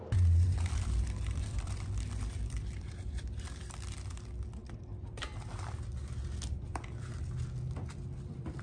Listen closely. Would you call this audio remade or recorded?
remade